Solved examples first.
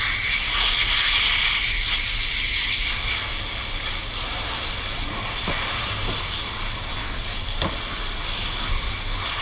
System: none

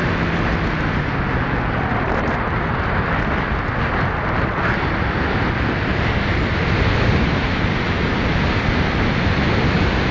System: none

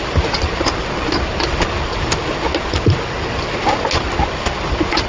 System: none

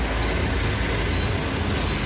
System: none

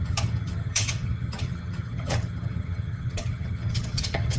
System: vocoder, HiFi-GAN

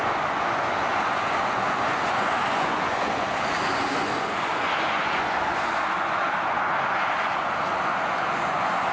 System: vocoder, Vocos